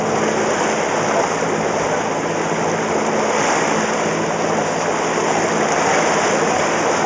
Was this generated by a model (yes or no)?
no